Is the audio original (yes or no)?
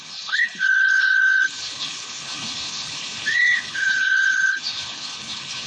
no